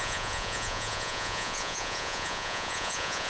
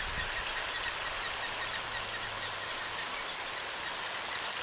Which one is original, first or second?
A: second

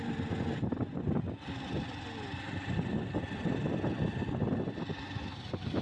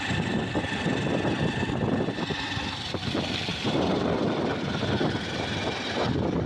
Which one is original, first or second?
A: first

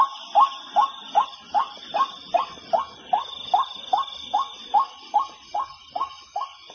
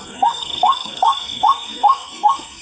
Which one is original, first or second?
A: first